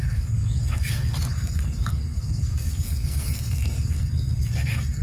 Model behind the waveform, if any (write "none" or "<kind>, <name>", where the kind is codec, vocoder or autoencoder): codec, SNAC